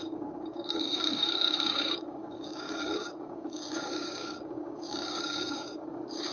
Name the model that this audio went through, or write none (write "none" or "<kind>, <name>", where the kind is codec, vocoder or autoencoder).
codec, DAC